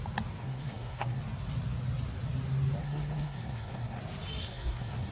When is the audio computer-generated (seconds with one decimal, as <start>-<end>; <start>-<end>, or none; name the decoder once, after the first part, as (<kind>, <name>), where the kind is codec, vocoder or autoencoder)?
0.4-1.2 (codec, SNAC); 2.8-4.0; 4.4-5.1